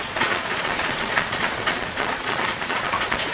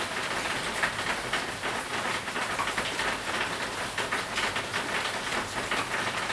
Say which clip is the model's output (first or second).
first